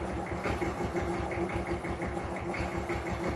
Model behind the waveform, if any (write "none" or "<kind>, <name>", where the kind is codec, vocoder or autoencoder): none